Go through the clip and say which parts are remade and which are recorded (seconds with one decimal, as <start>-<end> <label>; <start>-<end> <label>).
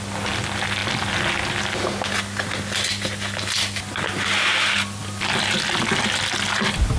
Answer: 0.0-7.0 recorded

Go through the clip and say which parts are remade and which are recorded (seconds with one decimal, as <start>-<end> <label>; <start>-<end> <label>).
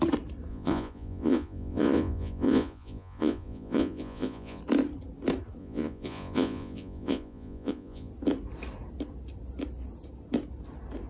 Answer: 0.0-0.5 recorded; 0.5-4.6 remade; 4.6-5.6 recorded; 5.6-8.1 remade; 8.1-11.1 recorded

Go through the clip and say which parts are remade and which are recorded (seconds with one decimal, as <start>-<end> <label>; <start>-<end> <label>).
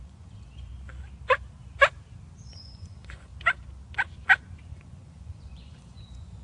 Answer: 0.0-0.7 remade; 0.7-2.5 recorded; 2.5-3.3 remade; 3.3-4.7 recorded; 4.7-6.4 remade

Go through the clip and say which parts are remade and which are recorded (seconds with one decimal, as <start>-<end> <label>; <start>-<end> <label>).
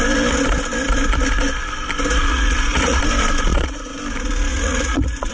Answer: 0.0-2.3 recorded; 2.3-3.0 remade; 3.0-3.5 recorded; 3.5-4.0 remade; 4.0-4.5 recorded; 4.5-5.3 remade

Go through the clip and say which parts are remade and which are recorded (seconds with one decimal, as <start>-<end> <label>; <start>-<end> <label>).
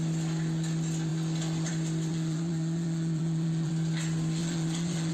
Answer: 0.0-2.1 recorded; 2.1-3.7 remade; 3.7-4.4 recorded; 4.4-5.1 remade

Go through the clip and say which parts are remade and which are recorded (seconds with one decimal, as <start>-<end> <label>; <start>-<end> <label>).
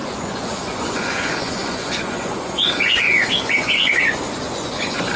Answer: 0.0-5.2 remade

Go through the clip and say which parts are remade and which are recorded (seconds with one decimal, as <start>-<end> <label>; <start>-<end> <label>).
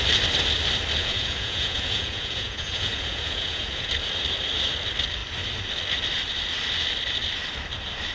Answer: 0.0-1.0 recorded; 1.0-3.9 remade; 3.9-8.1 recorded